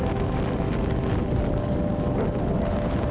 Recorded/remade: recorded